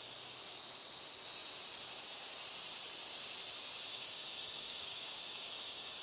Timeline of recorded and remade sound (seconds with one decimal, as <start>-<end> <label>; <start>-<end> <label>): 0.0-3.9 recorded; 3.9-6.0 remade